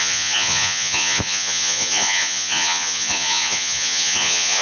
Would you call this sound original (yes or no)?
no